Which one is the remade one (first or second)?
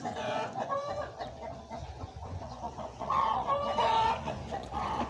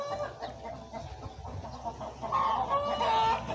first